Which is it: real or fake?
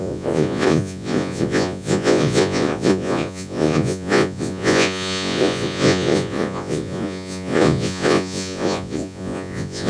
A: fake